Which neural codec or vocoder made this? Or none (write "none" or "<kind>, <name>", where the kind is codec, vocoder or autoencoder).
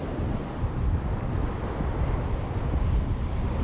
none